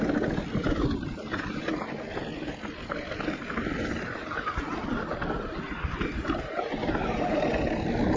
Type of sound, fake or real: real